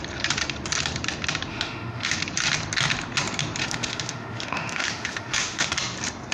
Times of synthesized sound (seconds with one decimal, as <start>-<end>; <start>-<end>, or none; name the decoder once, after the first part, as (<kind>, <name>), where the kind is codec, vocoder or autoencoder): 1.5-2.2 (autoencoder, DAC-VAE); 3.6-5.7